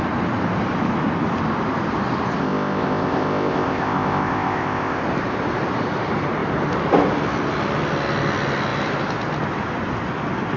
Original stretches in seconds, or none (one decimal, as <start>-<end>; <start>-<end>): 0.0-2.4; 5.0-10.6

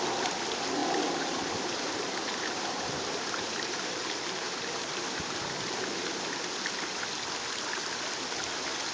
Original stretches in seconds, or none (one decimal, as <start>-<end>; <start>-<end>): 0.0-0.8; 5.8-8.9

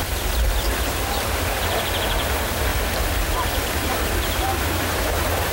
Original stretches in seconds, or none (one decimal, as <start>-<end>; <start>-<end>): none